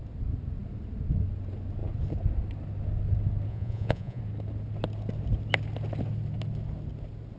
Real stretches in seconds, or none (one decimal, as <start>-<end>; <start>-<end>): 0.0-3.5; 4.2-7.4